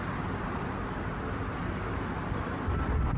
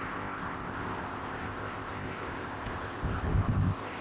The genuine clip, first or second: first